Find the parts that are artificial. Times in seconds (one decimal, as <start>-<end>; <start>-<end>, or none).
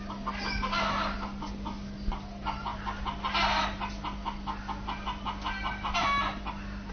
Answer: none